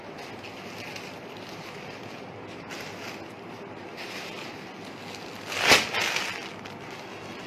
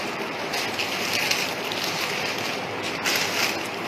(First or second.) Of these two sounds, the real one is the first